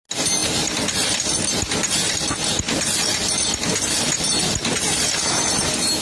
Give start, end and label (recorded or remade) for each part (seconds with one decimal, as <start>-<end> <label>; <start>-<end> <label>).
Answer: 0.0-6.0 recorded